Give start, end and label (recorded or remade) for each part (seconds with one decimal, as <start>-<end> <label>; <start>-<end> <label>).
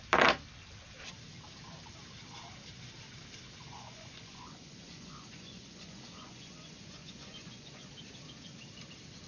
0.0-3.6 recorded; 3.6-7.9 remade; 7.9-9.3 recorded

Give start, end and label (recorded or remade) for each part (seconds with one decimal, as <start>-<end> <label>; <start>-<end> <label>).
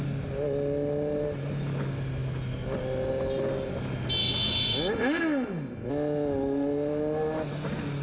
0.0-4.2 recorded; 4.2-5.9 remade; 5.9-8.0 recorded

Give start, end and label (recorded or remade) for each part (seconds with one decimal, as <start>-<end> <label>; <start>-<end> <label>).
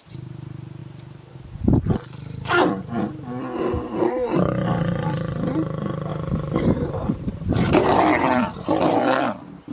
0.0-4.0 recorded; 4.0-4.8 remade; 4.8-6.1 recorded; 6.1-8.0 remade; 8.0-9.7 recorded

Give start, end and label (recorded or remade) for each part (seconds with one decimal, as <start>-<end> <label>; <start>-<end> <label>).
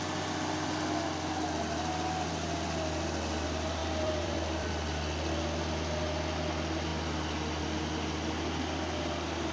0.0-3.8 recorded; 3.8-4.7 remade; 4.7-9.5 recorded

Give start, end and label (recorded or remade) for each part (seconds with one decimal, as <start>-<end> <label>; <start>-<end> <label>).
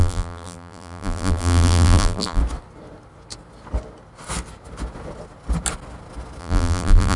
0.0-2.4 remade; 2.4-6.4 recorded; 6.4-7.2 remade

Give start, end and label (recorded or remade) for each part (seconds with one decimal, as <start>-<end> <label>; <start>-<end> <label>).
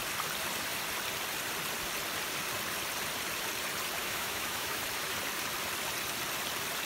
0.0-4.0 recorded; 4.0-4.8 remade; 4.8-6.9 recorded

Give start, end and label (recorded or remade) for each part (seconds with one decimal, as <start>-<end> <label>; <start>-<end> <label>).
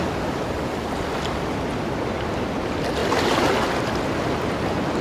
0.0-5.0 recorded